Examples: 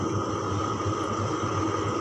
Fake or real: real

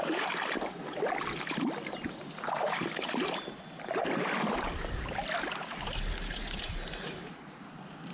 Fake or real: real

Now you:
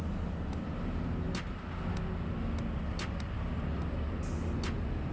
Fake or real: real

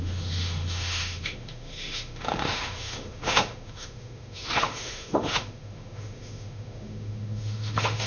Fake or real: fake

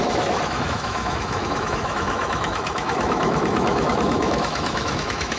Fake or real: fake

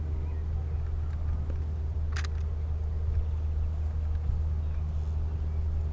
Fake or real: real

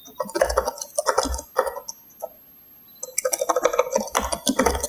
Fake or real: real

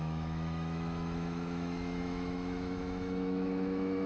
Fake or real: fake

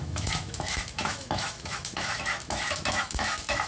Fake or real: fake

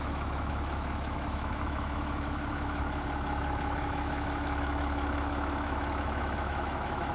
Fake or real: fake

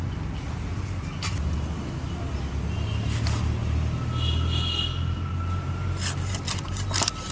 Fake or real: real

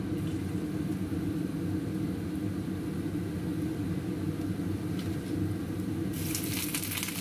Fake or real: real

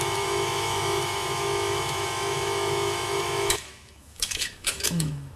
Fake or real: fake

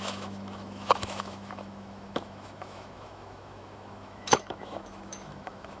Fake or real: fake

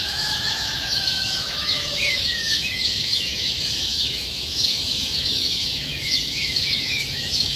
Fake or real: fake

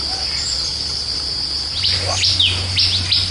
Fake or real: real